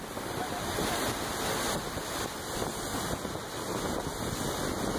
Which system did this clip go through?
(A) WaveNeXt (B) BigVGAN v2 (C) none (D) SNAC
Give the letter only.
C